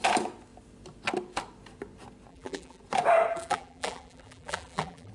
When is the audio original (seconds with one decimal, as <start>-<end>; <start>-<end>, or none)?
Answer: 0.0-2.3; 2.8-3.3